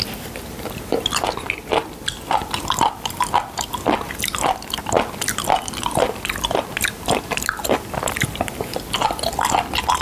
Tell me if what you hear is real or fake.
real